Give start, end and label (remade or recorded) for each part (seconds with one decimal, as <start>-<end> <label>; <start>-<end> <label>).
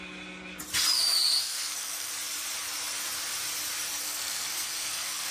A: 0.0-1.4 recorded; 1.4-2.1 remade; 2.1-4.0 recorded; 4.0-5.3 remade